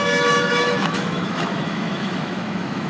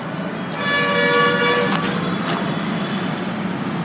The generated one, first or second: first